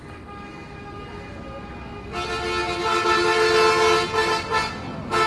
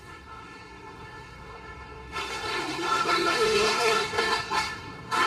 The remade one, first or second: second